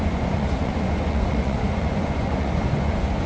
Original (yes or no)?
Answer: no